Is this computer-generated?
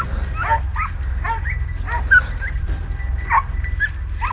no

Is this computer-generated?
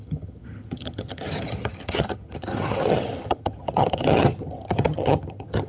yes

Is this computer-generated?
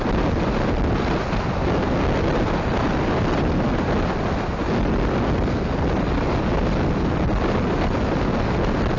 no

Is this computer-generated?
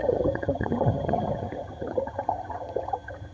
yes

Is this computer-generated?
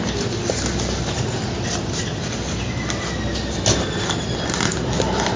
no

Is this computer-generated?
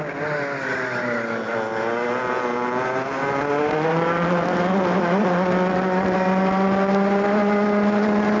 no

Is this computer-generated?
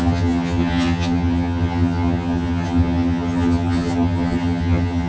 yes